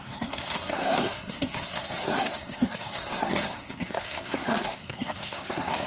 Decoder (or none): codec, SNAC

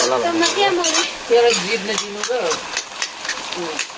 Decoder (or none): none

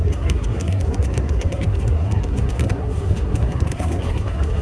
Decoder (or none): codec, SNAC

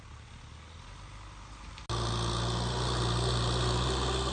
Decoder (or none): none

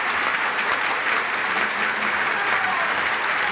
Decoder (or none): none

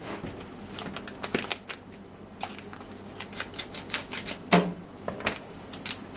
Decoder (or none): none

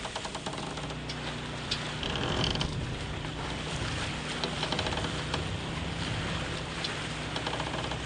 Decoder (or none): none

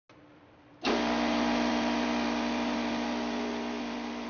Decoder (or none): none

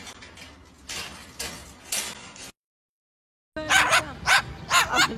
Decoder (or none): none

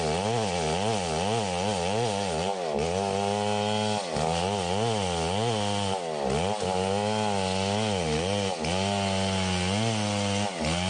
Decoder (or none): none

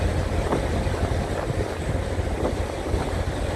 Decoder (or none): none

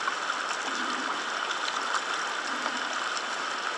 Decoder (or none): none